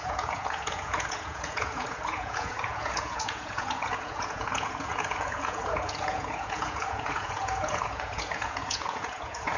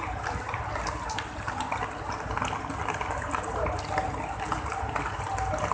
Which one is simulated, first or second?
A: first